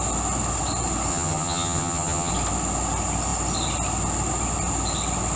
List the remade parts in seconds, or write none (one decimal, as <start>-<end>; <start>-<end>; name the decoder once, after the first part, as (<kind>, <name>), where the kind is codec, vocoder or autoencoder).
1.1-2.3 (vocoder, HiFi-GAN)

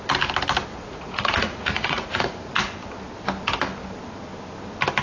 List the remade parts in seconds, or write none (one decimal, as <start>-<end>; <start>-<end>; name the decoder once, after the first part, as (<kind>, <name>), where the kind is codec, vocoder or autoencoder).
0.7-2.6 (vocoder, Vocos)

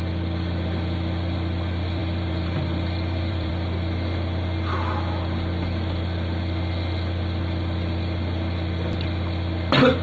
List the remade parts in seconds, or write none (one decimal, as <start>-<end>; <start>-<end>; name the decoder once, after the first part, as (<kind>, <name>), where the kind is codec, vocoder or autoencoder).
2.0-3.5 (vocoder, BigVGAN v2)